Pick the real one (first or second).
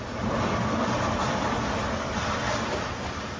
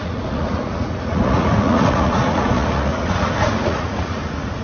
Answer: first